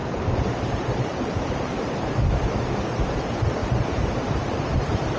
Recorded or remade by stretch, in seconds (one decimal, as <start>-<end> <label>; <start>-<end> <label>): 0.0-3.1 remade; 3.1-3.6 recorded; 3.6-4.7 remade; 4.7-5.2 recorded